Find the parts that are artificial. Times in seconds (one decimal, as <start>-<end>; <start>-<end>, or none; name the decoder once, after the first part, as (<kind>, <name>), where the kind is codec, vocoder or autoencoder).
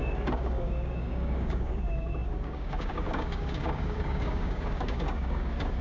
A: 0.0-5.8 (codec, DAC)